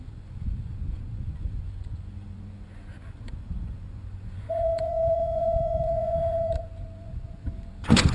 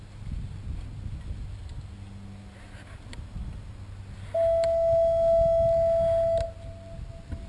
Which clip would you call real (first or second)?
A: second